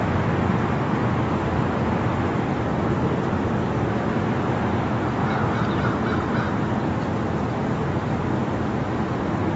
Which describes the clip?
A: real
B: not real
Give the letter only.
A